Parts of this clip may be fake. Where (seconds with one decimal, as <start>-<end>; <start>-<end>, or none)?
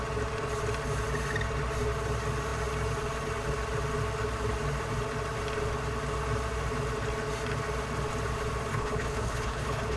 8.7-10.0